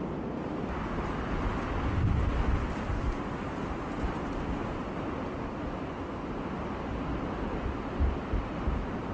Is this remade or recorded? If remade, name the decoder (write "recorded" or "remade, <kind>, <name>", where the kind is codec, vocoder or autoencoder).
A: recorded